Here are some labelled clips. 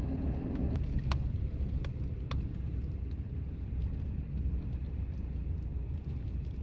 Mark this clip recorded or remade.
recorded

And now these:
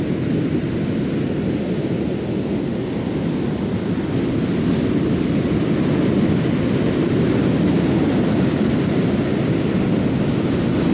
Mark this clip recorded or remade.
recorded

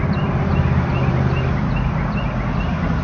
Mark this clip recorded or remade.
recorded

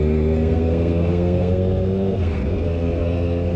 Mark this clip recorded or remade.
remade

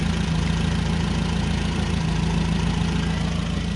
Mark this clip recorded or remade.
recorded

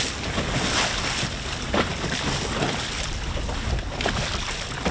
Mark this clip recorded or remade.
recorded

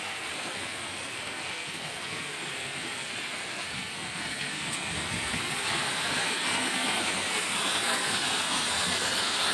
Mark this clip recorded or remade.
remade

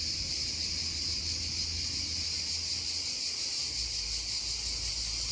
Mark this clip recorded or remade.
recorded